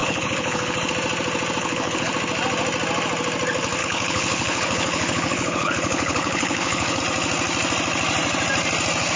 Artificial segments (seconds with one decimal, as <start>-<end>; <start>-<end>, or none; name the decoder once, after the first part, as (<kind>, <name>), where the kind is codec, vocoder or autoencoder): 0.0-0.9 (codec, HILCodec); 1.6-2.1; 3.8-7.0